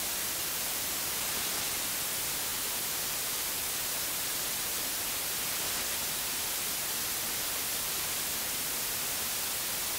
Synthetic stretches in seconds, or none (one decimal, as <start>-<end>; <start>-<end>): 0.5-1.5